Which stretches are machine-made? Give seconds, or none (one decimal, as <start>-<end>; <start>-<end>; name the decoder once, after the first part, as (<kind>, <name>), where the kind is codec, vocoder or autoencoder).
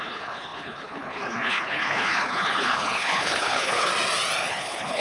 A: 0.0-3.9 (codec, HILCodec); 4.5-5.0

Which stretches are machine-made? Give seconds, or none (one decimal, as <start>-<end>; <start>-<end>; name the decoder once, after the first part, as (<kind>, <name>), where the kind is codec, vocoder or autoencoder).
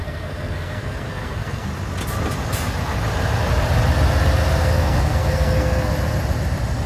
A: 0.0-1.7 (codec, SNAC); 4.6-5.9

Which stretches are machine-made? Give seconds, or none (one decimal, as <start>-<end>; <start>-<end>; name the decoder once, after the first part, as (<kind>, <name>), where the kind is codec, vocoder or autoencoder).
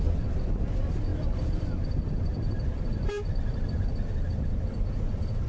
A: 2.3-3.1 (vocoder, BigVGAN v2)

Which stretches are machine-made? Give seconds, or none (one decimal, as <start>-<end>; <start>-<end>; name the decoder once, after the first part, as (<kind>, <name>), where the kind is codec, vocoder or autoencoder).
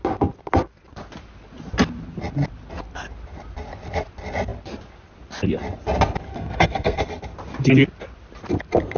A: 6.3-7.0 (codec, SNAC)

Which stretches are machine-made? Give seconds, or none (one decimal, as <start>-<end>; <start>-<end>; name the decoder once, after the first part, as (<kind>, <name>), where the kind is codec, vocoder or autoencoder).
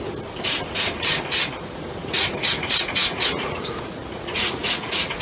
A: 2.0-5.2 (vocoder, Vocos)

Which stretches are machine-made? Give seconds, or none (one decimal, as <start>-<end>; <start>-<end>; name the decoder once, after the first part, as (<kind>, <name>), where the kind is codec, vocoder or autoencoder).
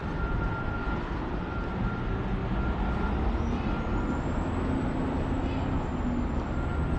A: none